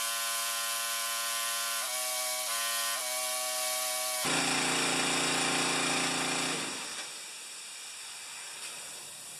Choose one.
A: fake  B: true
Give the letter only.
B